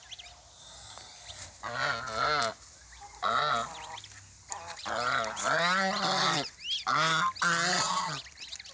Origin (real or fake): real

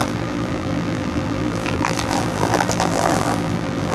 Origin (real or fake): fake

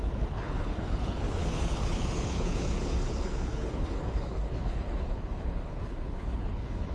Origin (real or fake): fake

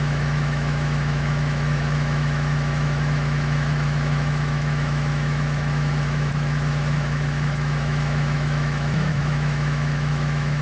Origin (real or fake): fake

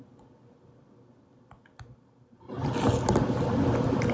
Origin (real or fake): real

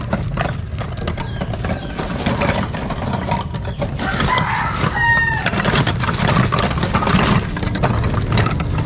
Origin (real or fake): real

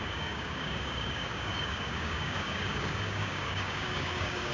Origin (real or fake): fake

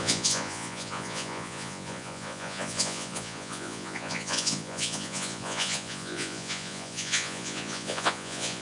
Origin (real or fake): fake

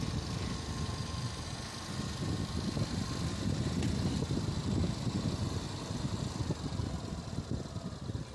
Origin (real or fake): real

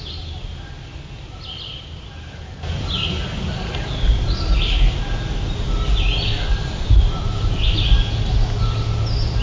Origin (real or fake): real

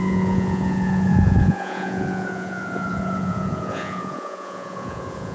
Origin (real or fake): fake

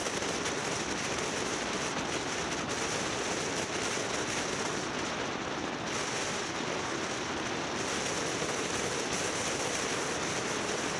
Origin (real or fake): real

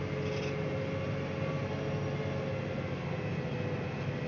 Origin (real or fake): real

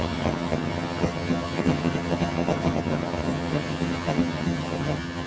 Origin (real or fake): fake